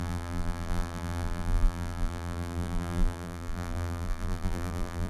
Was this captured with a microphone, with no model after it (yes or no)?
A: no